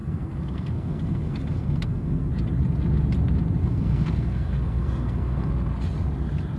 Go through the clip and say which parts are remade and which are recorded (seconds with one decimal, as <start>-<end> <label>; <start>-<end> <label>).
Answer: 0.0-2.3 remade; 2.3-3.6 recorded; 3.6-5.5 remade; 5.5-6.6 recorded